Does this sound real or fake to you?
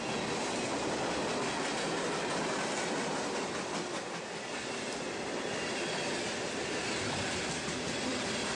fake